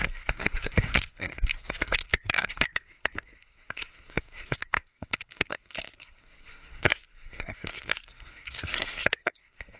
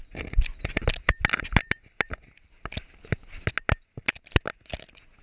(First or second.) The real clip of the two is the second